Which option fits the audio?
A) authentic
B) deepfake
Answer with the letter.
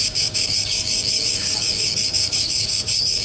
B